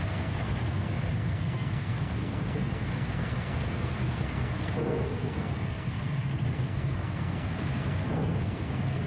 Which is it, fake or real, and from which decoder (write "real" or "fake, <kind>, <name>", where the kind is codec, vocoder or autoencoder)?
fake, codec, SNAC